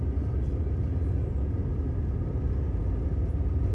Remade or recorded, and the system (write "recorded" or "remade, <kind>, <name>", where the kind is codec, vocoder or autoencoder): recorded